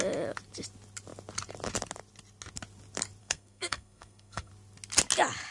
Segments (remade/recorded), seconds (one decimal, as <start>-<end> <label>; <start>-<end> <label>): 0.0-3.2 recorded; 3.2-4.5 remade; 4.5-5.5 recorded